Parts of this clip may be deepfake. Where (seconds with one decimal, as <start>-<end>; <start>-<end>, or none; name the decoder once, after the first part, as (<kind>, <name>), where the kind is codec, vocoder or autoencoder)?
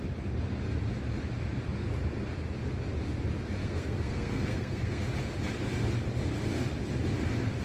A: 3.6-5.0 (codec, SNAC)